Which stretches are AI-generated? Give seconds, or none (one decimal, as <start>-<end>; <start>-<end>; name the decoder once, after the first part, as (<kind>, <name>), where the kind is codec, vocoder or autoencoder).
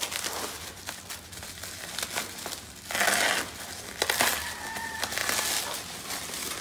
none